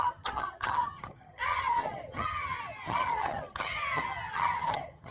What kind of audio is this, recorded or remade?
remade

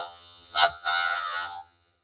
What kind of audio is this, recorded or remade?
remade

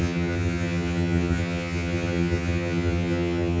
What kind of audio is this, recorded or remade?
remade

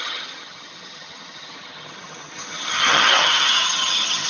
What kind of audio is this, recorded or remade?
remade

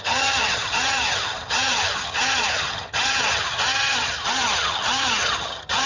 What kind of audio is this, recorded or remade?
remade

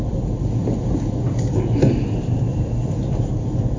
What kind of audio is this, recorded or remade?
recorded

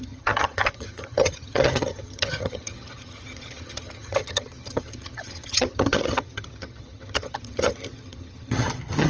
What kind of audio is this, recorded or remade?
remade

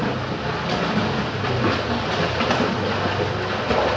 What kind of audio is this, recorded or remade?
recorded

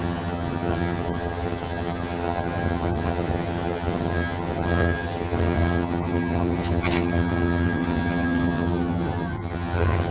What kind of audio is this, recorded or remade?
remade